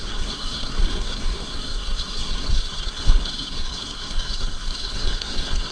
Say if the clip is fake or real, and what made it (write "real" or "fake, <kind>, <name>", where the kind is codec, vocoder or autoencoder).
fake, codec, SNAC